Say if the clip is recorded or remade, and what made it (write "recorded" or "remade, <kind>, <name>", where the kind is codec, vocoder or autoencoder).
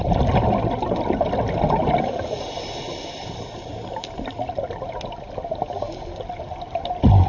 recorded